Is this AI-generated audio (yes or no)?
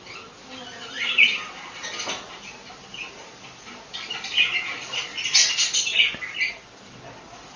no